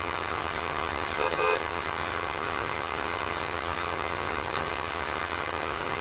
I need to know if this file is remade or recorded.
remade